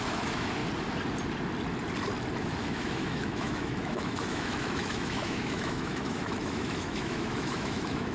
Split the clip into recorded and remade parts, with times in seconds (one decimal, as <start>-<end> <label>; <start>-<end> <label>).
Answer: 0.0-0.6 remade; 0.6-2.4 recorded; 2.4-8.1 remade